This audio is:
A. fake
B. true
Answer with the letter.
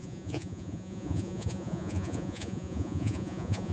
A